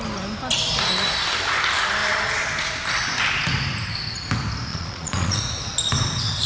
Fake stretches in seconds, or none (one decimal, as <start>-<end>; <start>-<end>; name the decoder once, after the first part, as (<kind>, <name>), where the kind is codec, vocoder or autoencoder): 4.7-5.4 (vocoder, Vocos)